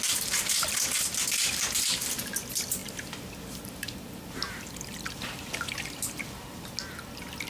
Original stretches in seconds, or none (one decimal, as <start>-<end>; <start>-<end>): 0.0-7.5